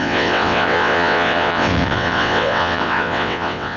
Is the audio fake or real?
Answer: fake